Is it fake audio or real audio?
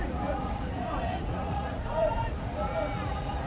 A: fake